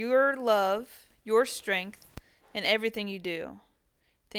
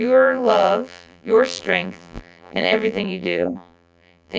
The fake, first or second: second